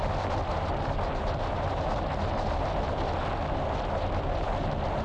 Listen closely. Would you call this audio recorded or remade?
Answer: recorded